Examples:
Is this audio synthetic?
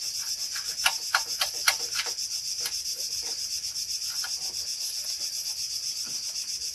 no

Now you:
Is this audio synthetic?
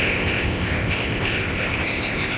yes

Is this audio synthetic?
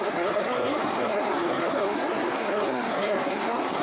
yes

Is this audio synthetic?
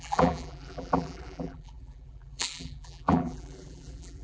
yes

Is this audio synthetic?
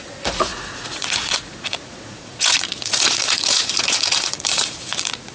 yes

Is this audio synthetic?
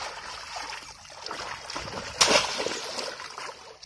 no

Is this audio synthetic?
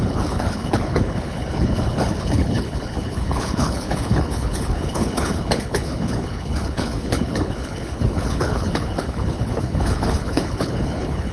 yes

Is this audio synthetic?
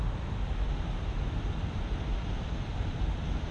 no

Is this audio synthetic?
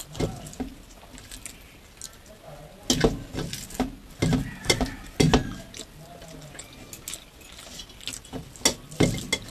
no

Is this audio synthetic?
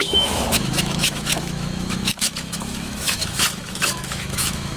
yes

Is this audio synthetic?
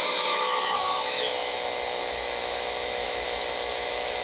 yes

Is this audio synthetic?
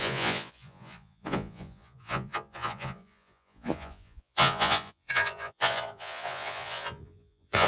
yes